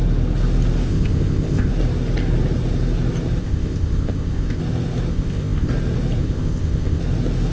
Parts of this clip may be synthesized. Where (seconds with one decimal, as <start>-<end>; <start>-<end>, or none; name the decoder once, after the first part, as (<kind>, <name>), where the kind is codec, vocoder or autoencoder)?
0.9-1.7 (codec, ZipCodec); 3.4-4.6; 5.1-5.7; 6.2-7.0